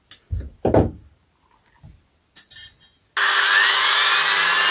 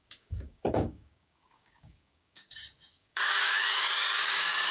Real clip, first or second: first